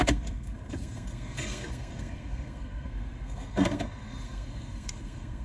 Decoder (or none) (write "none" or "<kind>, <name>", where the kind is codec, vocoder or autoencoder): codec, SNAC